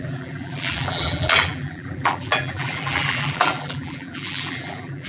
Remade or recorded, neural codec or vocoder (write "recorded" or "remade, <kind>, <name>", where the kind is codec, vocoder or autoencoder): remade, vocoder, BigVGAN v2